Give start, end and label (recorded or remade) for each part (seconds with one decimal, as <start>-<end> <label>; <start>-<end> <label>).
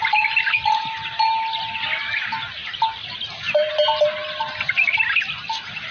0.0-5.9 recorded